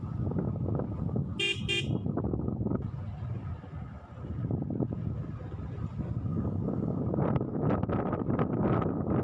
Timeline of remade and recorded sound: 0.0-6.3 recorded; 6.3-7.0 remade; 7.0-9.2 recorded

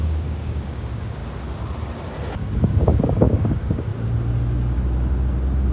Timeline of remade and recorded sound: 0.0-1.2 remade; 1.2-2.6 recorded; 2.6-3.9 remade; 3.9-5.7 recorded